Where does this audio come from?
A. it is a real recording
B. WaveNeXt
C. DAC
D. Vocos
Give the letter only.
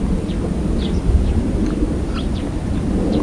A